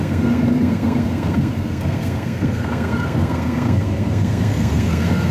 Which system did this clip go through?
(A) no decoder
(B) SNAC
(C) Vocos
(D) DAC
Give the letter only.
B